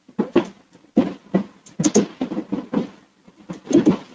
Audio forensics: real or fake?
real